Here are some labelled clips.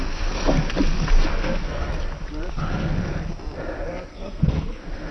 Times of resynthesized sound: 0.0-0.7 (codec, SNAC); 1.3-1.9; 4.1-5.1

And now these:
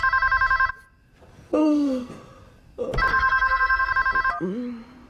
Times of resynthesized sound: 1.6-2.1 (codec, SNAC); 3.1-3.9

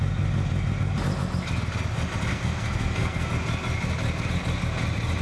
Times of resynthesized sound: 2.3-3.3 (codec, SNAC)

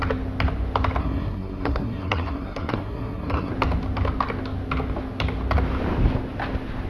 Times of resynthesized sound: 1.0-3.5 (codec, SNAC)

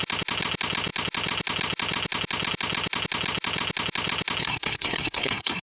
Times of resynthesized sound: 4.4-5.6 (codec, SNAC)